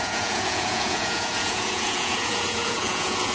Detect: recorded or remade remade